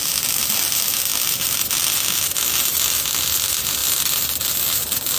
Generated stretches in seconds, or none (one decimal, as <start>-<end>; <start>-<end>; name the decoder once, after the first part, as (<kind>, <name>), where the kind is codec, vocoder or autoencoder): none